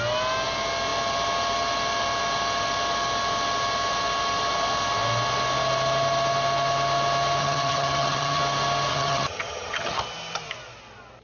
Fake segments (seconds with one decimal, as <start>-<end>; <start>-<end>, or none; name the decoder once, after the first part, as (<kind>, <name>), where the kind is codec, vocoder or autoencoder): 7.4-8.4 (vocoder, HiFi-GAN); 8.9-10.0